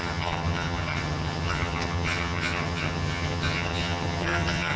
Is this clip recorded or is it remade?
remade